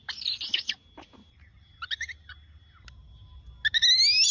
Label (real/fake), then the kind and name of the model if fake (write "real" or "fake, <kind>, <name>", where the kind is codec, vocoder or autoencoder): real